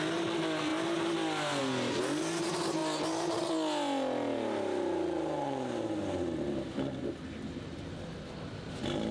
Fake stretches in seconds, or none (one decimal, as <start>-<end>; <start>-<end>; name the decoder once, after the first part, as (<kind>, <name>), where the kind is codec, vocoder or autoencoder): none